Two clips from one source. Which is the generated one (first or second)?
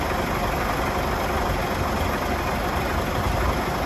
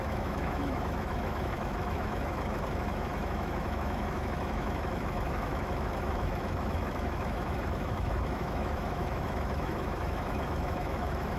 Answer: second